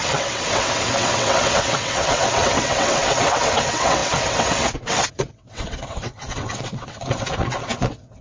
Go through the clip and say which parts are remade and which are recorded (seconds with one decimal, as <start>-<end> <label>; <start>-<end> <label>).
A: 0.0-8.2 remade